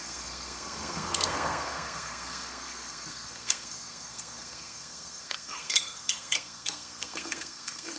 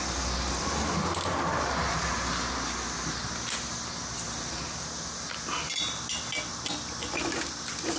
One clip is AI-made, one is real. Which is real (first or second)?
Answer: second